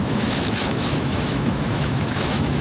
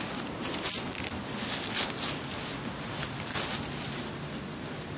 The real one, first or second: second